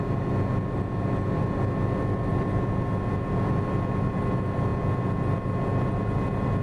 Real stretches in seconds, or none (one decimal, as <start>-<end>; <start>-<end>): 0.0-6.6